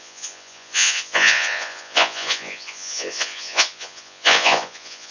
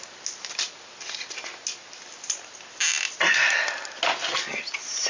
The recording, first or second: second